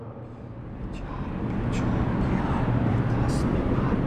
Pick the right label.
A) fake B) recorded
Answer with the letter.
B